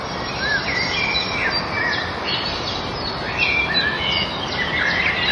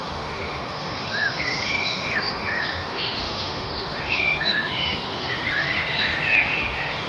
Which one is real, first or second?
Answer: first